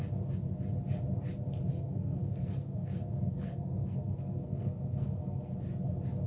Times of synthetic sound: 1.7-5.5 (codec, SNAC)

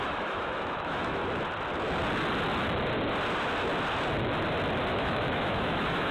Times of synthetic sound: 0.0-1.2 (autoencoder, DAC-VAE); 4.9-6.1

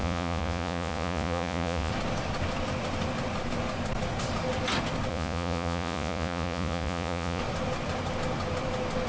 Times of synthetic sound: 0.0-1.9 (vocoder, Vocos); 5.1-7.4